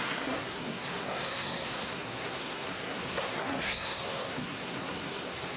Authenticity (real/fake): fake